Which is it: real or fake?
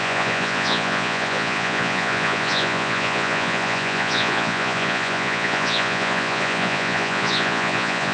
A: fake